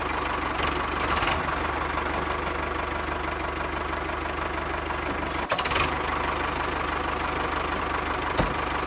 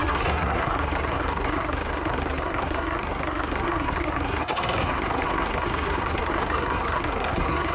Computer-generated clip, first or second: second